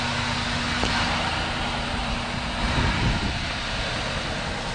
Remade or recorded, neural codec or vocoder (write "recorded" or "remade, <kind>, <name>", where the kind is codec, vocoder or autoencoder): recorded